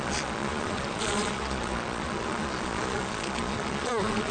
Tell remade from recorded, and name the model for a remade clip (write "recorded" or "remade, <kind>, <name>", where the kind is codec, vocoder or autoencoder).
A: remade, vocoder, Vocos